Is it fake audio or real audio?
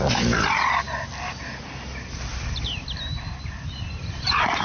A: real